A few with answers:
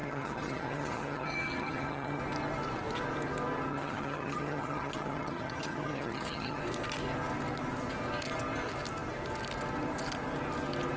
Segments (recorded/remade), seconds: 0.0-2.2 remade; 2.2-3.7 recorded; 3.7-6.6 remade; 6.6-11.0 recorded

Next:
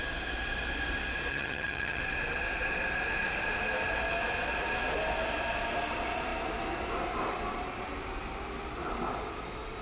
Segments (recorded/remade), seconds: 0.0-1.3 recorded; 1.3-2.0 remade; 2.0-9.8 recorded

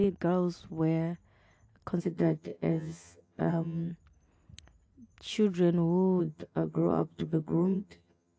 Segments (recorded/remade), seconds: 0.0-2.0 recorded; 2.0-3.9 remade; 3.9-6.2 recorded; 6.2-8.4 remade

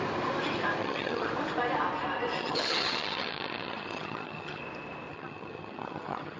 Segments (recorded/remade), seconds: 0.0-0.8 recorded; 0.8-1.3 remade; 1.3-2.3 recorded; 2.3-4.6 remade; 4.6-5.1 recorded; 5.1-6.4 remade

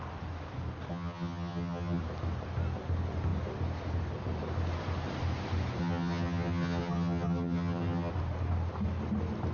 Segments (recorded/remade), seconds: 0.0-0.9 recorded; 0.9-2.0 remade; 2.0-5.8 recorded; 5.8-8.1 remade; 8.1-9.5 recorded

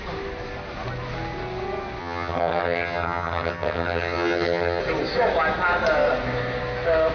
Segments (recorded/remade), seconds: 0.0-2.0 recorded; 2.0-4.8 remade; 4.8-7.1 recorded

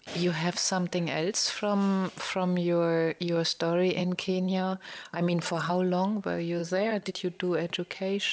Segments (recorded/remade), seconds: 0.0-4.0 recorded; 4.0-5.7 remade; 5.7-6.6 recorded; 6.6-7.1 remade; 7.1-8.3 recorded

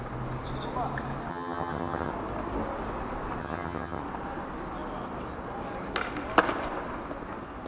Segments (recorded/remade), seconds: 0.0-1.3 recorded; 1.3-2.1 remade; 2.1-3.4 recorded; 3.4-4.0 remade; 4.0-7.7 recorded